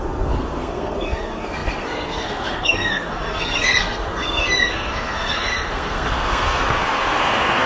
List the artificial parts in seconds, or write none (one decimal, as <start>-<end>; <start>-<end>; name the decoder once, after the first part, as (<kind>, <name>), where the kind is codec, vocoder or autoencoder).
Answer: 0.0-7.7 (codec, SNAC)